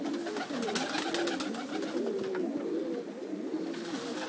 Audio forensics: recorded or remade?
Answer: recorded